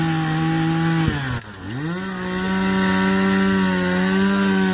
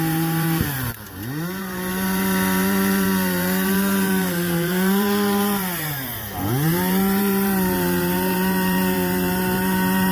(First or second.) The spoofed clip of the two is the second